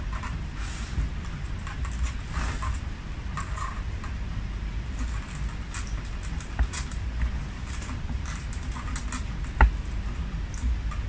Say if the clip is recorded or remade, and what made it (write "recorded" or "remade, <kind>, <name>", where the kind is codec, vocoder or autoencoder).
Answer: recorded